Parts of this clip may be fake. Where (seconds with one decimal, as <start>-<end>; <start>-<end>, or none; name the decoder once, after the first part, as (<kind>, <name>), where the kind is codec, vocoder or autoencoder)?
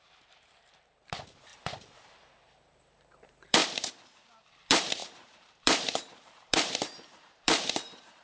0.0-3.6 (vocoder, BigVGAN v2); 4.5-8.2